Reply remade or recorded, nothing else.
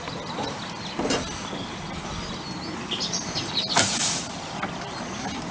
recorded